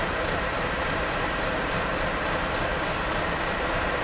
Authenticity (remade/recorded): remade